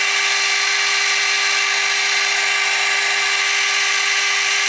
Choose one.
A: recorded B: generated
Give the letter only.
A